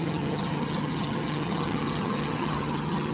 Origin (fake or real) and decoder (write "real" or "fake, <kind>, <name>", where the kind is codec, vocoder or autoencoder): fake, vocoder, HiFi-GAN